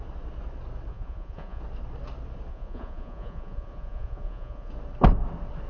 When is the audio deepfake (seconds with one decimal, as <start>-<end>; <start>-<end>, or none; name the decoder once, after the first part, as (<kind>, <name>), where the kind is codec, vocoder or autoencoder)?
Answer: 0.9-1.6 (vocoder, Vocos); 2.5-4.7